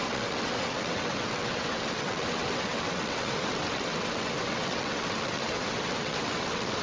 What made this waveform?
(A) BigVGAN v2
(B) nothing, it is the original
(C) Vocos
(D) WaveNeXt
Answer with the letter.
D